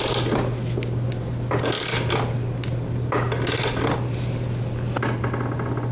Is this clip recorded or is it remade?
recorded